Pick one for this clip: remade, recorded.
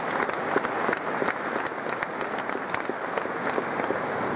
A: recorded